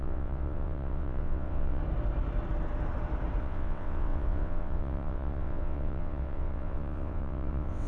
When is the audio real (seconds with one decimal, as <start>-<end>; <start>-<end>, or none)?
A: 1.8-3.4

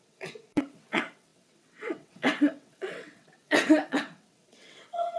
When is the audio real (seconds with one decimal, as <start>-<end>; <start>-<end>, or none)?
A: none

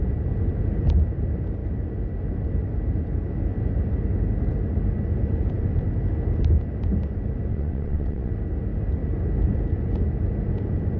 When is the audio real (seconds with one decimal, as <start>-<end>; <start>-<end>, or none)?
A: 0.0-7.5; 8.3-11.0

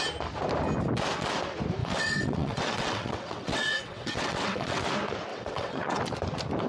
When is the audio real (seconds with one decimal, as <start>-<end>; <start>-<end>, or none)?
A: 0.0-1.8; 4.8-5.3; 6.0-6.7